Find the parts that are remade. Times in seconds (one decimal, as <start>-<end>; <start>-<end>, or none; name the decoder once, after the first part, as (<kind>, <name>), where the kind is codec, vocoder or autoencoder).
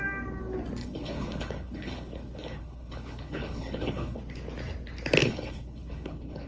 0.8-4.2 (codec, HILCodec); 5.2-6.5